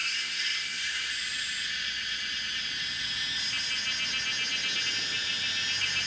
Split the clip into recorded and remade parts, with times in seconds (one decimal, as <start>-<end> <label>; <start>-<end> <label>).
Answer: 0.0-1.1 remade; 1.1-6.1 recorded